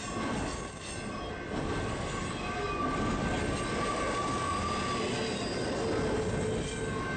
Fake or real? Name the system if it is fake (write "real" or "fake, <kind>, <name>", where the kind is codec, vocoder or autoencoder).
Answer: real